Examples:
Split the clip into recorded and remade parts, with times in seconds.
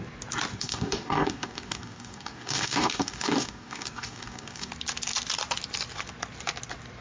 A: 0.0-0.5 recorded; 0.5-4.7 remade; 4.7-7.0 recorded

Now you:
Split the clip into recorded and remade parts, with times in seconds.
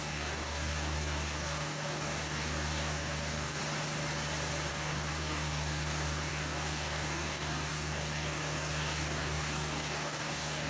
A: 0.0-3.6 remade; 3.6-4.7 recorded; 4.7-10.7 remade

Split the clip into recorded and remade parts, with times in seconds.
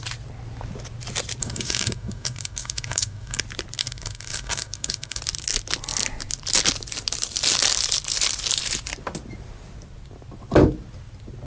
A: 0.0-1.4 recorded; 1.4-3.4 remade; 3.4-3.8 recorded; 3.8-5.2 remade; 5.2-11.5 recorded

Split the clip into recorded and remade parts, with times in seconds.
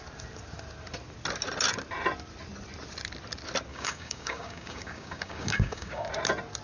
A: 0.0-3.7 recorded; 3.7-6.1 remade; 6.1-6.6 recorded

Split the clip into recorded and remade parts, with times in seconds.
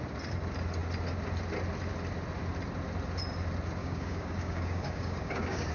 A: 0.0-3.8 recorded; 3.8-5.7 remade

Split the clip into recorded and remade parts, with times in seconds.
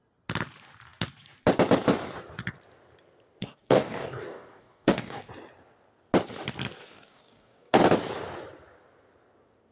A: 0.0-3.4 recorded; 3.4-5.3 remade; 5.3-6.8 recorded; 6.8-7.8 remade; 7.8-9.7 recorded